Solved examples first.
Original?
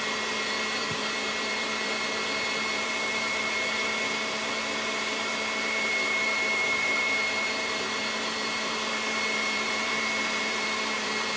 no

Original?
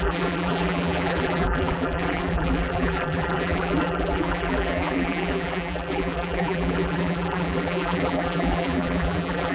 no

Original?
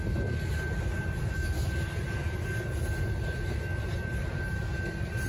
yes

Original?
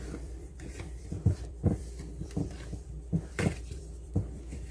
no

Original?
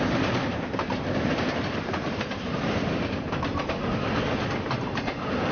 no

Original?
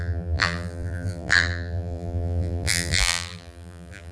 no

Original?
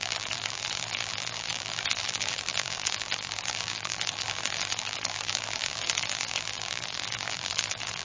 no